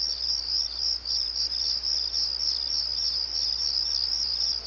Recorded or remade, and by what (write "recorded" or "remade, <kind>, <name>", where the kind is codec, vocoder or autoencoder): recorded